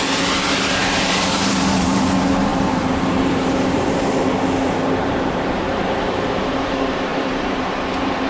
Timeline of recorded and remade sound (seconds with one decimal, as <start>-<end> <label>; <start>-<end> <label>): 0.0-8.3 remade